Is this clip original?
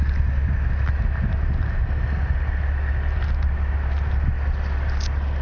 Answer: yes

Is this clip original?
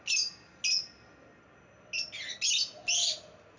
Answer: yes